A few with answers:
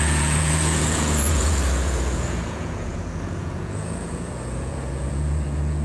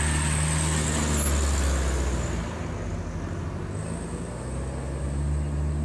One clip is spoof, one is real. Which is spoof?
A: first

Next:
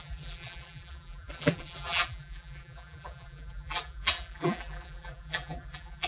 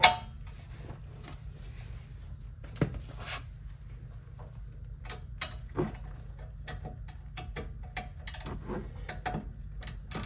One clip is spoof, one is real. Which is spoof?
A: first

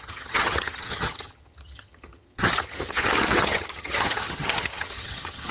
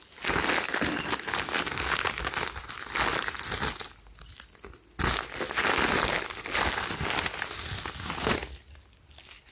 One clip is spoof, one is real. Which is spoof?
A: first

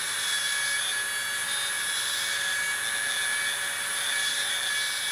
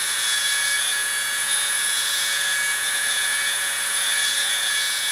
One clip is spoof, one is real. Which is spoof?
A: second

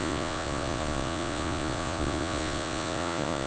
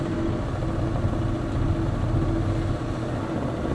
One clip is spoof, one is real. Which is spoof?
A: first